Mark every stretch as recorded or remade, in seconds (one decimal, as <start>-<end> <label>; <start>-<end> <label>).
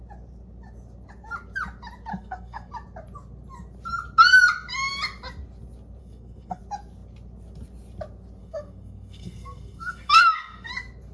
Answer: 0.0-2.1 recorded; 2.1-2.7 remade; 2.7-6.0 recorded; 6.0-6.6 remade; 6.6-8.4 recorded; 8.4-10.7 remade; 10.7-11.1 recorded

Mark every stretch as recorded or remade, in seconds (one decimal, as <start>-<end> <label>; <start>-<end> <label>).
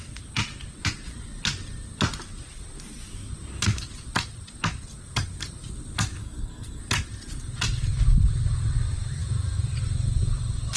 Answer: 0.0-6.2 recorded; 6.2-6.8 remade; 6.8-10.8 recorded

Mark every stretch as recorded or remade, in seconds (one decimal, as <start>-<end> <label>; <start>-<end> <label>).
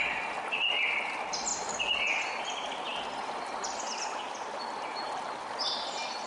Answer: 0.0-6.3 recorded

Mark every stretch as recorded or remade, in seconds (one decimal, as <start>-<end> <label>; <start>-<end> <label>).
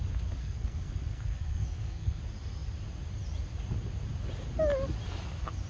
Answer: 0.0-0.4 recorded; 0.4-2.2 remade; 2.2-5.7 recorded